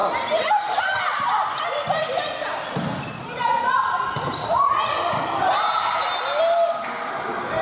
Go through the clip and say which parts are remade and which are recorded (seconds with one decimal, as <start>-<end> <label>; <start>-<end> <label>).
0.0-7.6 recorded